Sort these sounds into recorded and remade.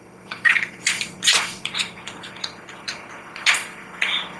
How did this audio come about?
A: remade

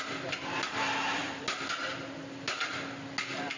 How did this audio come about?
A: recorded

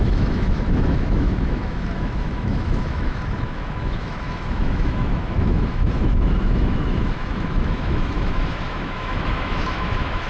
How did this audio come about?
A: remade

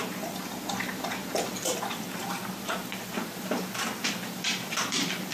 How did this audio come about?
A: recorded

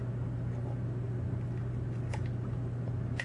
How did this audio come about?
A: recorded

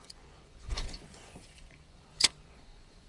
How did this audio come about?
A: remade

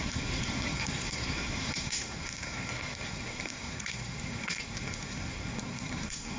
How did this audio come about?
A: remade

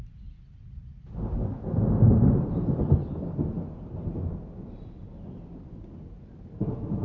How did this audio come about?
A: recorded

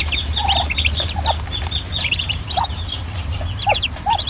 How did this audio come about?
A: recorded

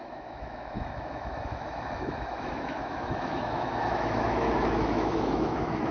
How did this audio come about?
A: remade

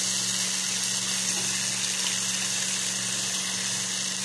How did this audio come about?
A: recorded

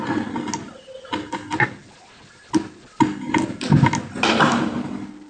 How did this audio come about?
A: recorded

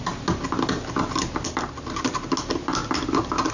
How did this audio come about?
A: recorded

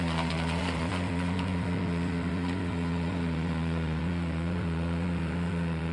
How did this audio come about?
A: remade